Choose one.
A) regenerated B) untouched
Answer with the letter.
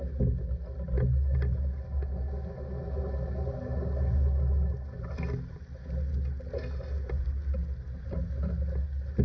B